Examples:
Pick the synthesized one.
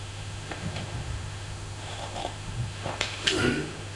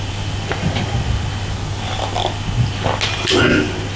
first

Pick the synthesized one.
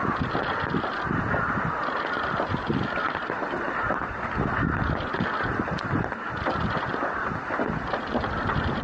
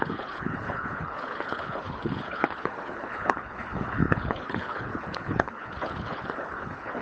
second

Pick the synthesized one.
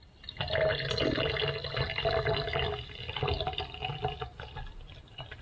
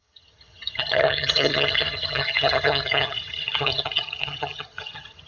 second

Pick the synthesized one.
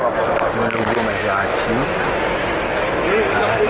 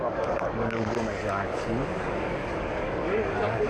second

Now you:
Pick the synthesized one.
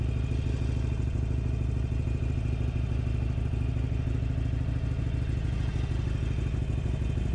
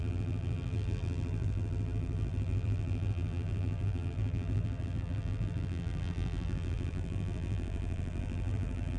second